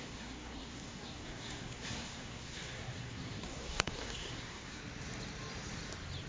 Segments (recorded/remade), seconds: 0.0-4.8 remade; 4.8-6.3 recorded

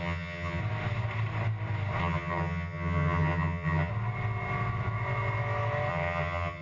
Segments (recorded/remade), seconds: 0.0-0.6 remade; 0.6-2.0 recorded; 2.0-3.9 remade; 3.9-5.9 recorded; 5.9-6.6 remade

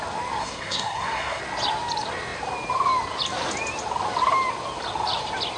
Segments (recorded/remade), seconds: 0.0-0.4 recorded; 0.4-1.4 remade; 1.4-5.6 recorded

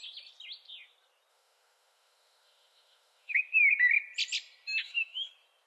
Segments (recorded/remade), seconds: 0.0-1.3 recorded; 1.3-3.4 remade; 3.4-4.8 recorded; 4.8-5.3 remade; 5.3-5.7 recorded

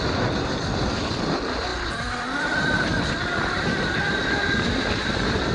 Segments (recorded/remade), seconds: 0.0-5.5 recorded